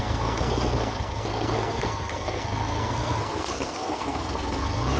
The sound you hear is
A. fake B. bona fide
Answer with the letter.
A